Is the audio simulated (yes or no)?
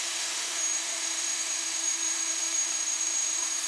yes